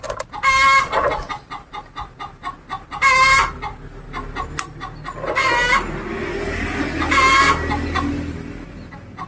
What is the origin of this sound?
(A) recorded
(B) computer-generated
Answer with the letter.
A